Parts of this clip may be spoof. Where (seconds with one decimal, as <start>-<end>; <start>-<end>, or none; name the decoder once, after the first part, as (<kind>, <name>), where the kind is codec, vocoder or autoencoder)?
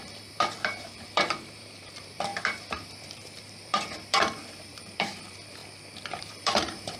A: 0.0-5.6 (vocoder, BigVGAN v2); 6.2-7.0